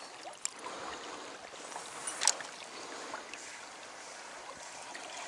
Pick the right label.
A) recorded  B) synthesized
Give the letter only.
A